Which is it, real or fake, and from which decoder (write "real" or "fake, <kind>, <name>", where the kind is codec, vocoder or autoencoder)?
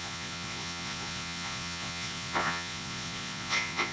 fake, vocoder, Vocos